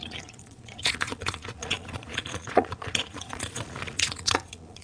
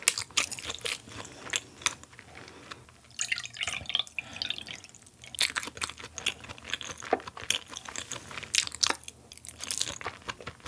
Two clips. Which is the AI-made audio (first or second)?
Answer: first